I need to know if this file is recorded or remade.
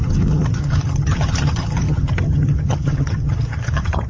remade